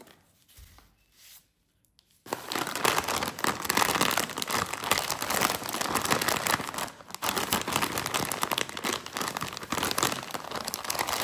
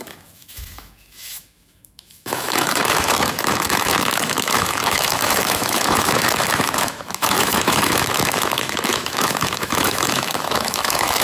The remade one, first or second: second